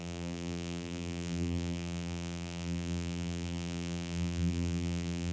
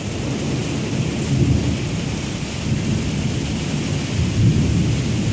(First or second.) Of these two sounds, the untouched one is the second